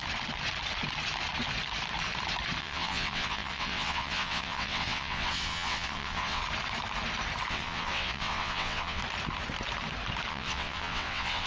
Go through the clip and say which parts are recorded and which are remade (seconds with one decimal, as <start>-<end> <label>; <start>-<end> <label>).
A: 0.0-2.6 recorded; 2.6-6.4 remade; 6.4-7.5 recorded; 7.5-9.0 remade; 9.0-10.3 recorded; 10.3-11.5 remade